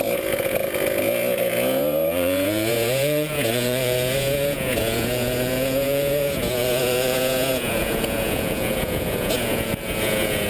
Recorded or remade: remade